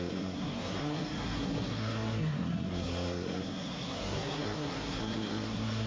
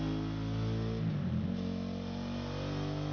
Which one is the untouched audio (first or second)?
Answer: second